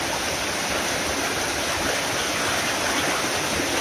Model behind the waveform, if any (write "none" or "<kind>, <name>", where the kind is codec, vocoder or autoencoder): none